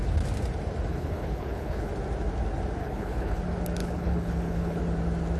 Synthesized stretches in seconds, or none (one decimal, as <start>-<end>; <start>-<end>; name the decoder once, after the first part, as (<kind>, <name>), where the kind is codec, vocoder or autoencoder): 0.9-1.9 (codec, HILCodec); 2.8-3.4; 3.8-4.8